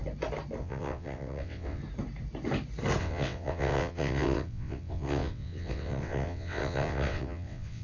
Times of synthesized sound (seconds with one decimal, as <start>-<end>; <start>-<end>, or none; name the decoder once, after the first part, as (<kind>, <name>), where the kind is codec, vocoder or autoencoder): 0.6-1.8 (vocoder, WaveNeXt); 3.0-7.8